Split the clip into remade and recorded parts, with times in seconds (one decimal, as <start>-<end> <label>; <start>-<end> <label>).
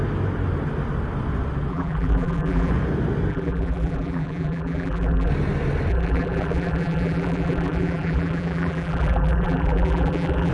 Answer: 0.0-1.7 recorded; 1.7-2.7 remade; 2.7-3.3 recorded; 3.3-5.3 remade; 5.3-5.9 recorded; 5.9-10.5 remade